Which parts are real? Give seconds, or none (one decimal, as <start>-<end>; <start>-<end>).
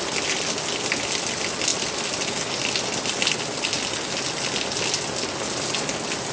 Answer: 0.0-6.3